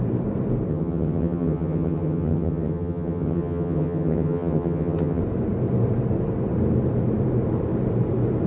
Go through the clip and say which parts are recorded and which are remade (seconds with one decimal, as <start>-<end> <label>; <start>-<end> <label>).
0.0-0.7 recorded; 0.7-5.2 remade; 5.2-8.5 recorded